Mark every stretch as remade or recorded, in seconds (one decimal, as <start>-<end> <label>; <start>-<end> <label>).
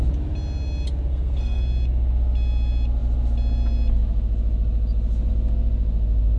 0.0-1.1 recorded; 1.1-1.6 remade; 1.6-6.4 recorded